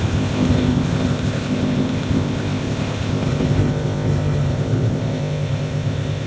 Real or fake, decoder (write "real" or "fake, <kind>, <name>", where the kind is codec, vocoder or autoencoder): fake, codec, ZipCodec